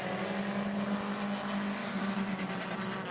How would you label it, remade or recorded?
recorded